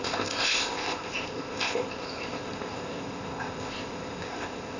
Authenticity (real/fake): fake